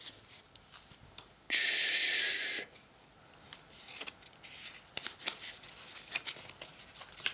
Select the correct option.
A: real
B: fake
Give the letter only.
A